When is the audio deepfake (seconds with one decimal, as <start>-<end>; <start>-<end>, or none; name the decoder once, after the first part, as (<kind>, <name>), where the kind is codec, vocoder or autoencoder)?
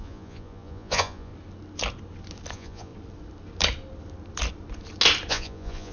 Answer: 0.0-1.3 (vocoder, Vocos); 2.5-2.9; 5.3-5.9